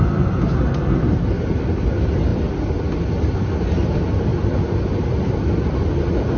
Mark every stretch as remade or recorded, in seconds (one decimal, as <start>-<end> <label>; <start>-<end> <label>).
0.0-6.4 recorded